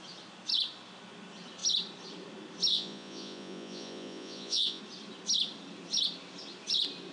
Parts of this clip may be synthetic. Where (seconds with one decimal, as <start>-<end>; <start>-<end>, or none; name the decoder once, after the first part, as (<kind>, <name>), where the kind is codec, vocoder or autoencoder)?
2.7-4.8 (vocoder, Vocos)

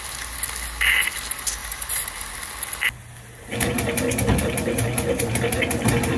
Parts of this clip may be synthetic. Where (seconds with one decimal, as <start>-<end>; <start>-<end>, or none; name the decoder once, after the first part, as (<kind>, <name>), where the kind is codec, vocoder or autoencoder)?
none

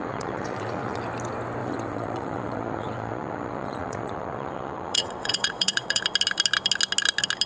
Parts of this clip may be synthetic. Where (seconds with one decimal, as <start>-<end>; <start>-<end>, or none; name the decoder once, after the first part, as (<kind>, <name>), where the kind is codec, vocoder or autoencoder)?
0.0-1.0 (vocoder, WaveNeXt); 1.6-6.0

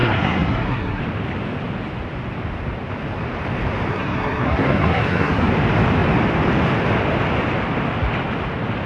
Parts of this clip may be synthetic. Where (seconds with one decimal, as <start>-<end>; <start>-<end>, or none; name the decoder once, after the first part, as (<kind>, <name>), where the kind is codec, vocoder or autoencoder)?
0.0-1.0 (codec, SNAC); 3.9-5.5

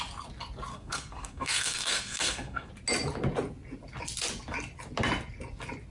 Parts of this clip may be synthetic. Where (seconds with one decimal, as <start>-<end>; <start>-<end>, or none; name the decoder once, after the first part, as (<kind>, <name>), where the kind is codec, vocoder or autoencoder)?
0.7-2.7 (codec, SNAC)

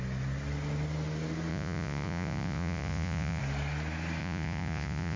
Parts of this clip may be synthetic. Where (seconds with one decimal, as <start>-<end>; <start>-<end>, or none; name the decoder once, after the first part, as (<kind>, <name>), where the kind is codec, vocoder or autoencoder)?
1.5-3.4 (vocoder, Vocos); 4.2-5.2

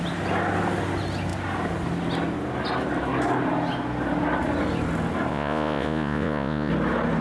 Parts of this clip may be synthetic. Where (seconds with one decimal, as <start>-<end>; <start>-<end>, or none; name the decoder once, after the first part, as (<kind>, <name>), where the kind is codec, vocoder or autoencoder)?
5.3-6.7 (vocoder, Vocos)

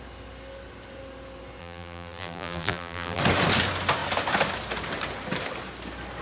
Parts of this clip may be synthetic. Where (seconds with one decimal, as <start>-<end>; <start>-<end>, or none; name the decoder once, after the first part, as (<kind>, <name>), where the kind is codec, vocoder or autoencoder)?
1.6-3.2 (vocoder, BigVGAN v2)